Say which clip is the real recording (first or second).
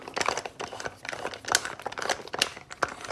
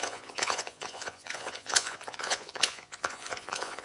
first